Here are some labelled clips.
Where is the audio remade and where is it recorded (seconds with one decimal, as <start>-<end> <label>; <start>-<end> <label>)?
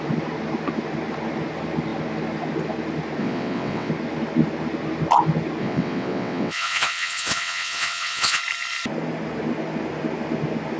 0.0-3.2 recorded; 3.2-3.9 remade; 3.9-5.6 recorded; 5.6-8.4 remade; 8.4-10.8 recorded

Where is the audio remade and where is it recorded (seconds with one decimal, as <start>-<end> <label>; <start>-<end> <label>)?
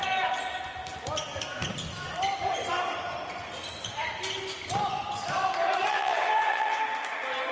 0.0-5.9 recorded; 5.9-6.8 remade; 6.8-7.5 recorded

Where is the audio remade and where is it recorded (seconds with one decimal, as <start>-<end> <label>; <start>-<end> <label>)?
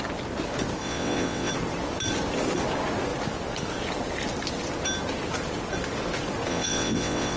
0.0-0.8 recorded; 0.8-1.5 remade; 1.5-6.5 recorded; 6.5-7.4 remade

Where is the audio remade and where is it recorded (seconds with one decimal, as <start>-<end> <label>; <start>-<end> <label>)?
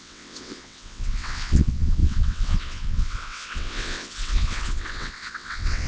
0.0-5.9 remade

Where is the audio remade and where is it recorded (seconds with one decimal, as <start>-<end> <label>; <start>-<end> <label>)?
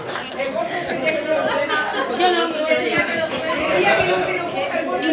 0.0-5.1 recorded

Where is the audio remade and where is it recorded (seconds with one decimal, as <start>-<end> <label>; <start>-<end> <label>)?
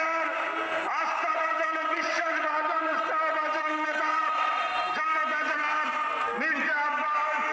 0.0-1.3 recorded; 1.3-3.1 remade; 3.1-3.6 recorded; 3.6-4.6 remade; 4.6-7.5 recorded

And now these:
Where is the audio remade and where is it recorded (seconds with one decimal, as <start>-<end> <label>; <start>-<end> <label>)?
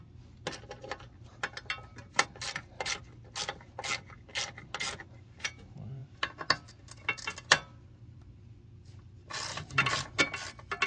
0.0-10.9 recorded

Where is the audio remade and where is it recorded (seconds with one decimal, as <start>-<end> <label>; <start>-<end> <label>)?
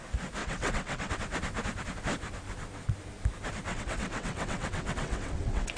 0.0-0.4 recorded; 0.4-1.1 remade; 1.1-3.7 recorded; 3.7-5.8 remade